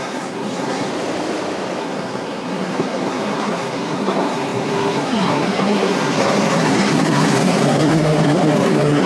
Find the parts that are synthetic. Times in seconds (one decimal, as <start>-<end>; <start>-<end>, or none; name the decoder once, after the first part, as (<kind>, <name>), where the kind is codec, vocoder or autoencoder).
0.0-0.9 (codec, SNAC); 1.8-9.1